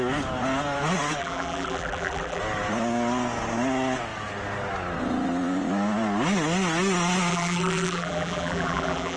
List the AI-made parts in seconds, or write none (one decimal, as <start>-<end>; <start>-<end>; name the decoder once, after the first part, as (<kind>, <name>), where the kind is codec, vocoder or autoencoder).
1.2-2.4 (vocoder, BigVGAN v2); 7.3-9.2